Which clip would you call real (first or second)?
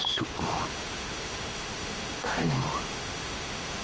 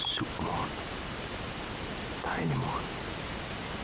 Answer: second